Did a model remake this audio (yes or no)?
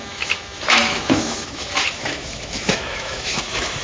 yes